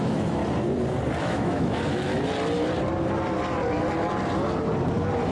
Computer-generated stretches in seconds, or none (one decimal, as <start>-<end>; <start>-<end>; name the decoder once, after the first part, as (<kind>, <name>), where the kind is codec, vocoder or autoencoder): 0.0-0.4 (autoencoder, DAC-VAE); 1.2-2.1